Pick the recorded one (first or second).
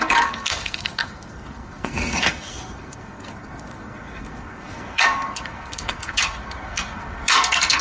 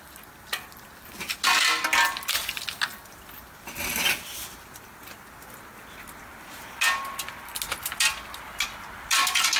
second